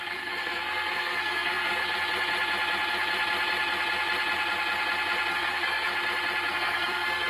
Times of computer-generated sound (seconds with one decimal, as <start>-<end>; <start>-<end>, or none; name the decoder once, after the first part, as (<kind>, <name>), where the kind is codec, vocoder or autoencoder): 0.0-1.8 (codec, SNAC); 5.3-5.9; 6.5-7.3